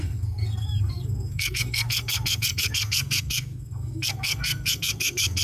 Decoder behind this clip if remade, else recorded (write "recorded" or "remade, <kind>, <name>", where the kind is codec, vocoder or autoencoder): remade, codec, SNAC